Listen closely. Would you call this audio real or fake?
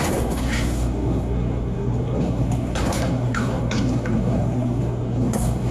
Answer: fake